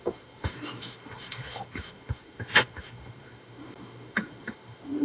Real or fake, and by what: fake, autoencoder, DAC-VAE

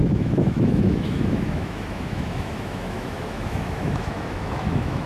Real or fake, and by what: fake, autoencoder, DAC-VAE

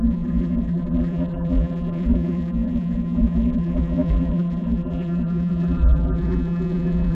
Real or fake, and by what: fake, vocoder, BigVGAN v2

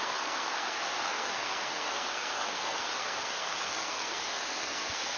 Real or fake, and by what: fake, codec, SNAC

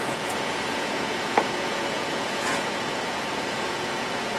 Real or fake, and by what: fake, vocoder, Vocos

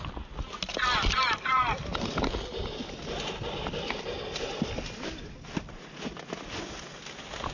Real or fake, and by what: real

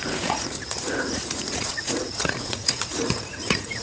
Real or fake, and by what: fake, vocoder, Vocos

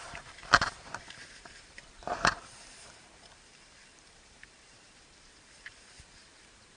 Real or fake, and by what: fake, vocoder, BigVGAN v2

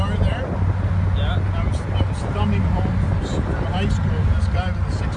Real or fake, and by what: real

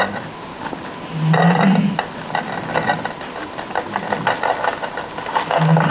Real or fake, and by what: real